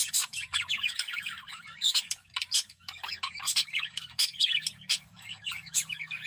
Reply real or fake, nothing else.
fake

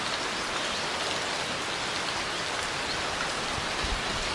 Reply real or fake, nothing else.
real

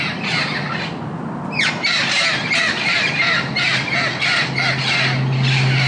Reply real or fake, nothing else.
real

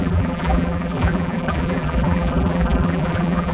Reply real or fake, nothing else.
fake